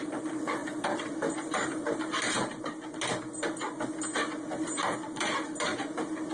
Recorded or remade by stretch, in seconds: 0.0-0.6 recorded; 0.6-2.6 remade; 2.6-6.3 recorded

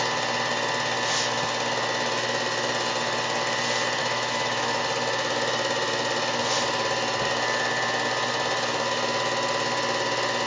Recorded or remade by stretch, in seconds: 0.0-4.0 recorded; 4.0-4.8 remade; 4.8-10.5 recorded

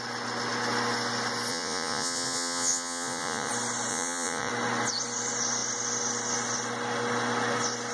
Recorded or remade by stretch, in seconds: 0.0-1.5 recorded; 1.5-3.5 remade; 3.5-3.9 recorded; 3.9-4.5 remade; 4.5-7.9 recorded